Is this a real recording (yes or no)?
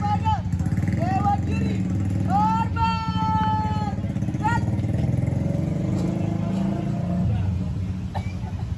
yes